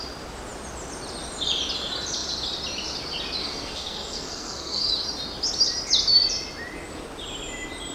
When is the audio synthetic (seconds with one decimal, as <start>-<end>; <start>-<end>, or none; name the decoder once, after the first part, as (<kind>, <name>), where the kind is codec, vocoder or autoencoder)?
3.4-4.9 (codec, SNAC)